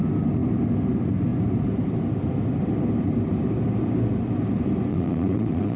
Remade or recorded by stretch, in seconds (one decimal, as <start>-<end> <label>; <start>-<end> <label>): 0.0-4.9 recorded; 4.9-5.8 remade